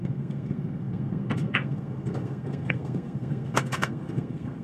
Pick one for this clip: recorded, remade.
remade